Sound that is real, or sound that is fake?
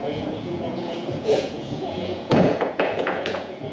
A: fake